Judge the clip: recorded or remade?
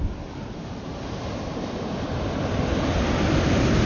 recorded